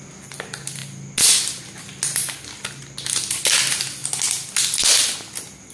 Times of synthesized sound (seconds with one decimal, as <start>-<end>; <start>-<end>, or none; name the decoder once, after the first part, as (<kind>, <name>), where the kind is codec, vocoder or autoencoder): none